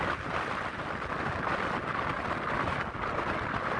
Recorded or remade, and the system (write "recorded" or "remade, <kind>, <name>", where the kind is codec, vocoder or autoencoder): recorded